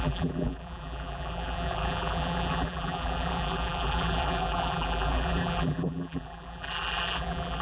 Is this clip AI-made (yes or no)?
yes